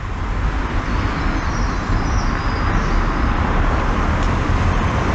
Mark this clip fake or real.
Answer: real